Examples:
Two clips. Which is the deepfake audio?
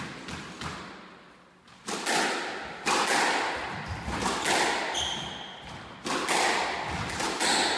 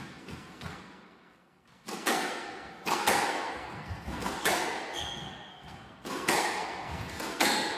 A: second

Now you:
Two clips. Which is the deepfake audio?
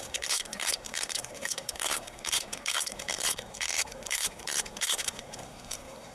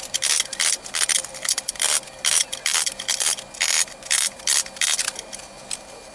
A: first